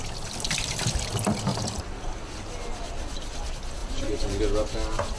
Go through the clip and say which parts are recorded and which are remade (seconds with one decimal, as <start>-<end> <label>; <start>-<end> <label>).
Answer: 0.0-1.5 recorded; 1.5-2.0 remade; 2.0-3.8 recorded; 3.8-4.4 remade; 4.4-5.2 recorded